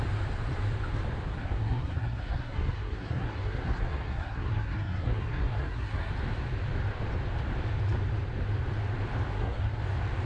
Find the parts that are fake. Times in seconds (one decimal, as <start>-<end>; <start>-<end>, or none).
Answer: 1.3-6.1; 9.3-9.8